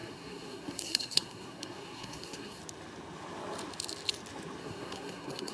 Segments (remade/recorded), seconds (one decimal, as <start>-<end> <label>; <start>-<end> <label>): 0.0-2.6 remade; 2.6-4.6 recorded; 4.6-5.5 remade